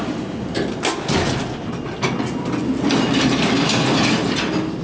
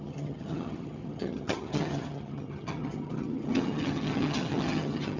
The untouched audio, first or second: first